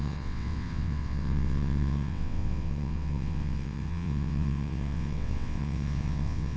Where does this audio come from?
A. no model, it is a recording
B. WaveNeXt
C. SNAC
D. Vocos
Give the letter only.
B